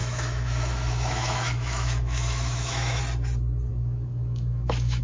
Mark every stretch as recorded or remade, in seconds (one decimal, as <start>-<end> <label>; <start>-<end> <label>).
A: 0.0-3.0 remade; 3.0-3.7 recorded; 3.7-5.0 remade